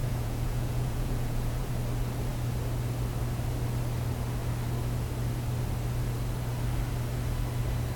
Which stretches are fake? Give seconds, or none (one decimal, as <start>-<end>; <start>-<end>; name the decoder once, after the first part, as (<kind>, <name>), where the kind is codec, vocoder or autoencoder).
0.0-1.7 (vocoder, Vocos)